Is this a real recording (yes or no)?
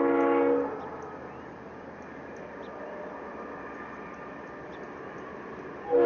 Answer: yes